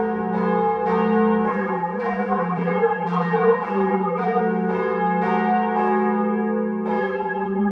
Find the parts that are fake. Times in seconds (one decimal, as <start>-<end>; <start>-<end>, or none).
1.5-4.4; 7.0-7.7